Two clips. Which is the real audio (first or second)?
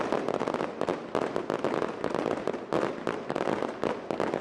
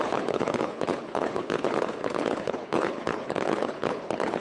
first